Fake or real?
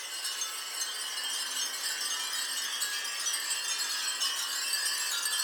real